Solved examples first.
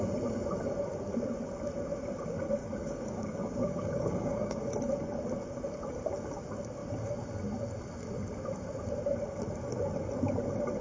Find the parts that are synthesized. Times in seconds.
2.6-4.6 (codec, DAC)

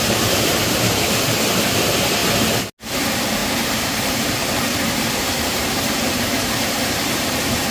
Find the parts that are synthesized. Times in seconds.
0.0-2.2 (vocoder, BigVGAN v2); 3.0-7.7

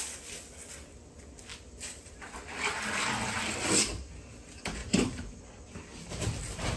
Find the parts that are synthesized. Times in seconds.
1.5-2.2 (vocoder, BigVGAN v2); 4.8-5.5